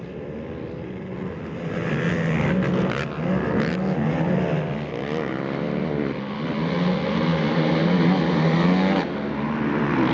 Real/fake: real